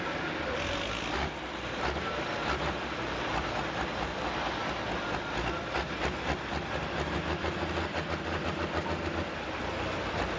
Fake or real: real